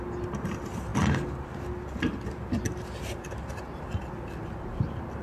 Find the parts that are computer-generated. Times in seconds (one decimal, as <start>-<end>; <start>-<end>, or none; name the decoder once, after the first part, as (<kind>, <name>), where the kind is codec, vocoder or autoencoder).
none